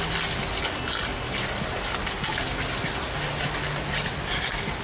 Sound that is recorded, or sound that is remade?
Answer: recorded